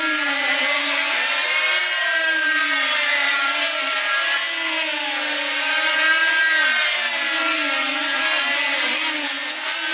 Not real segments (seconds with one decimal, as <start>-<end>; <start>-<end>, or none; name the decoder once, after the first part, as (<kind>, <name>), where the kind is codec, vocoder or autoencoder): 1.8-3.6 (vocoder, BigVGAN v2)